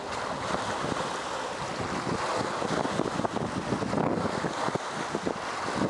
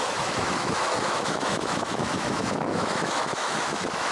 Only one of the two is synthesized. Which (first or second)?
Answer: second